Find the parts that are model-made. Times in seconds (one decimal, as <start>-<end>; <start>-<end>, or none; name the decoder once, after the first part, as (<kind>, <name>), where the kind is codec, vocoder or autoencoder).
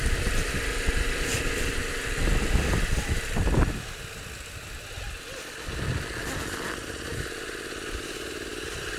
none